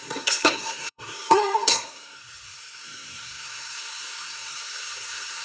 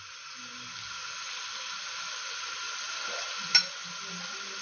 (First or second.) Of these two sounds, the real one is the second